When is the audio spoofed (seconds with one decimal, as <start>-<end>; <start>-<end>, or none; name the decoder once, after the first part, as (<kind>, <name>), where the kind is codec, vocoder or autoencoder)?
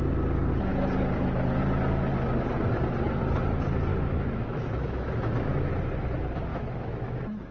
3.9-5.7 (autoencoder, DAC-VAE); 6.5-7.5